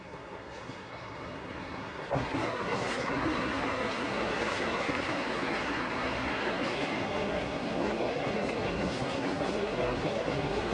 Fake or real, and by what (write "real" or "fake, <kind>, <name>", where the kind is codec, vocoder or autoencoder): fake, codec, SNAC